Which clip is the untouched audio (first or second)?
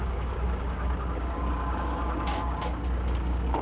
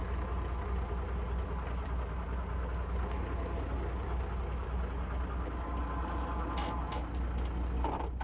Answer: second